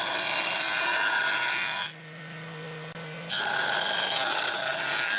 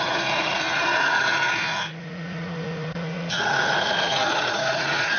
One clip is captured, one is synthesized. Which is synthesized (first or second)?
second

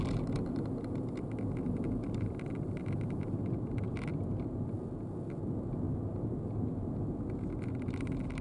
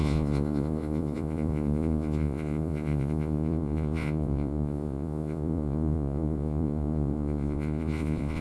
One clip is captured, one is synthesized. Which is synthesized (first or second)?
second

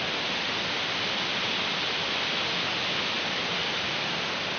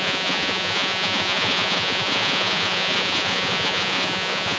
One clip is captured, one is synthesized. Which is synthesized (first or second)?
second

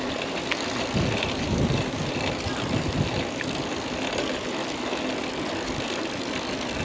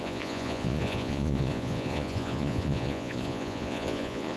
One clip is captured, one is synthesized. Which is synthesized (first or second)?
second